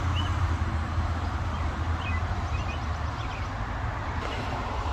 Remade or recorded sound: recorded